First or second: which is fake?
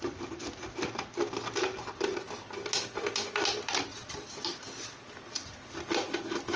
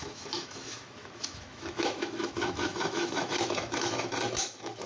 second